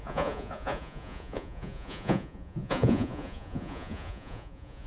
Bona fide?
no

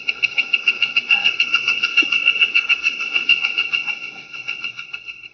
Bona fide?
no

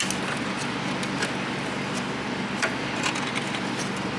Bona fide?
yes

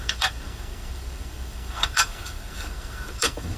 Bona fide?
no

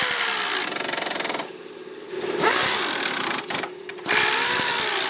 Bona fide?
no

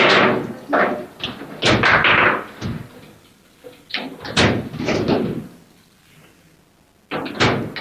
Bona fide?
yes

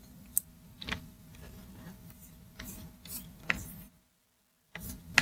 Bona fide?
yes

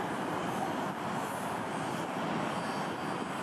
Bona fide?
yes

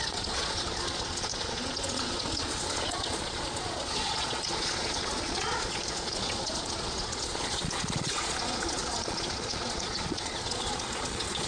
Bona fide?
no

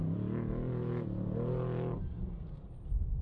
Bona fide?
yes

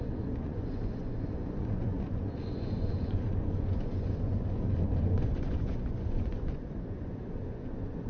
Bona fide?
no